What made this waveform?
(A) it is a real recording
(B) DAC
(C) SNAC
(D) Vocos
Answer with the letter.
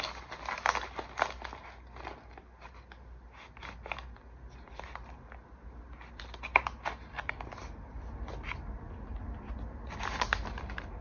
A